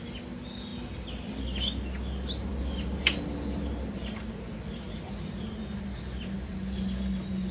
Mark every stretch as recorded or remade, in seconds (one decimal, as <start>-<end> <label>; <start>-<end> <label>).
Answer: 0.0-7.5 recorded

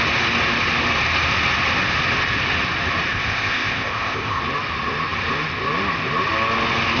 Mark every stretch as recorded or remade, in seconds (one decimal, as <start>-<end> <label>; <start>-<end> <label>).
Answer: 0.0-3.1 recorded; 3.1-4.4 remade; 4.4-7.0 recorded

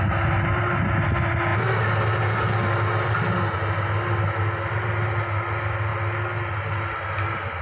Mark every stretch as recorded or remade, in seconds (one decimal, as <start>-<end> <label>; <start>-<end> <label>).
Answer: 0.0-7.6 recorded

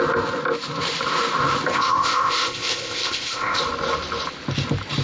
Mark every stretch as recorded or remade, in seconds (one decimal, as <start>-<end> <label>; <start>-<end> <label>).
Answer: 0.0-1.7 recorded; 1.7-3.6 remade; 3.6-5.0 recorded

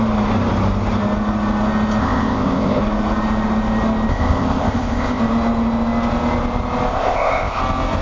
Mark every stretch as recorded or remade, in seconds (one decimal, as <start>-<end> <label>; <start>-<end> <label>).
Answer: 0.0-2.0 recorded; 2.0-2.8 remade; 2.8-4.1 recorded; 4.1-5.2 remade; 5.2-6.9 recorded; 6.9-7.6 remade; 7.6-8.0 recorded

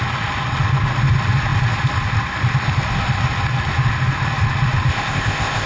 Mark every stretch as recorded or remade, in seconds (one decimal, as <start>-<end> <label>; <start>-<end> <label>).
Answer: 0.0-4.9 recorded; 4.9-5.7 remade

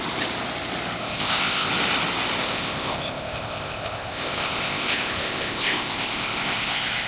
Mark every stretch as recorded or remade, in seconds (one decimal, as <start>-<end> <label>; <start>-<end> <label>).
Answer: 0.0-1.0 recorded; 1.0-1.7 remade; 1.7-2.4 recorded; 2.4-7.1 remade

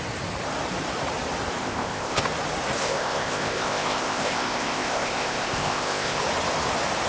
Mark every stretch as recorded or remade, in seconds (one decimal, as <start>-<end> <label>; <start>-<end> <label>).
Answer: 0.0-1.6 recorded; 1.6-2.2 remade; 2.2-2.8 recorded; 2.8-6.2 remade; 6.2-7.1 recorded